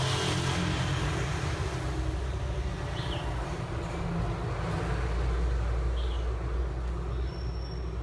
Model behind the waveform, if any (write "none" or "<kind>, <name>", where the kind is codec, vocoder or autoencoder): none